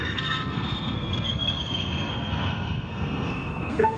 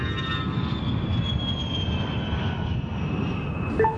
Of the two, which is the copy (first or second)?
first